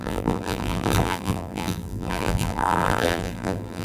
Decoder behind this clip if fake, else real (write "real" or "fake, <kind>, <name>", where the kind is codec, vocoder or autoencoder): fake, vocoder, BigVGAN v2